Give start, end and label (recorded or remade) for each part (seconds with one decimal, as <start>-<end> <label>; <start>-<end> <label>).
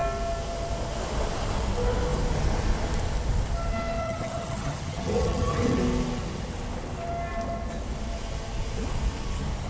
0.0-4.0 recorded; 4.0-5.8 remade; 5.8-9.7 recorded